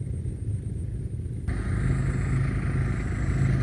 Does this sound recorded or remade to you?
recorded